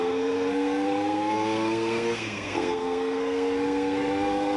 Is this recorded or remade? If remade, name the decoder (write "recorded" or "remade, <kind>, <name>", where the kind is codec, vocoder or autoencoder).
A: remade, codec, SNAC